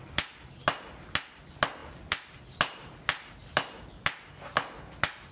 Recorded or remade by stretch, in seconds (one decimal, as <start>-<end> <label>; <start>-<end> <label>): 0.0-5.3 recorded